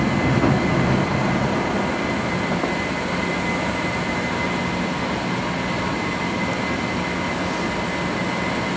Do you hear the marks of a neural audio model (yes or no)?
no